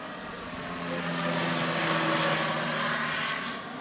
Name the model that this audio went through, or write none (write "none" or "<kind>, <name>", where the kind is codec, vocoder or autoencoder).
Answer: none